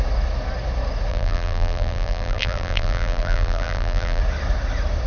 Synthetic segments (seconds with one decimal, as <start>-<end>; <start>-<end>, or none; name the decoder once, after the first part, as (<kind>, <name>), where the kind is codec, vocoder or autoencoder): 1.1-4.2 (vocoder, BigVGAN v2)